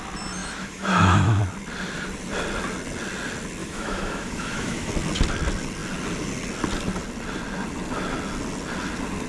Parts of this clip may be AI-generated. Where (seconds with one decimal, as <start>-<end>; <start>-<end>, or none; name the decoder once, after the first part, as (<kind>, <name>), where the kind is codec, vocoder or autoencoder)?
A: 0.4-1.4 (autoencoder, DAC-VAE); 3.6-4.9